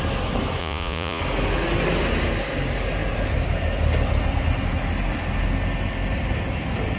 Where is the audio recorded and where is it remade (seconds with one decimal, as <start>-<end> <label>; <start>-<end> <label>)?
0.0-0.6 recorded; 0.6-1.2 remade; 1.2-7.0 recorded